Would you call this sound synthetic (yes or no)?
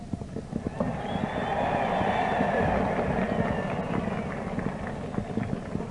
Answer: no